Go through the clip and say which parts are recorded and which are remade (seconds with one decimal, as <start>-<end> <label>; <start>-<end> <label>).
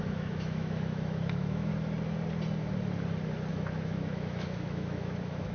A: 0.0-1.7 remade; 1.7-3.5 recorded; 3.5-5.5 remade